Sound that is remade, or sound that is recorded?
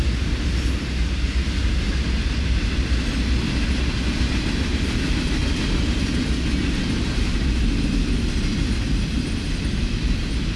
recorded